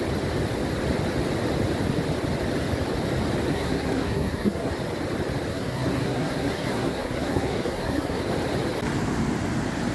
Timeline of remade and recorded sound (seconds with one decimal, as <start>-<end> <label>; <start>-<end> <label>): 0.0-3.5 recorded; 3.5-4.7 remade; 4.7-5.5 recorded; 5.5-8.2 remade; 8.2-9.9 recorded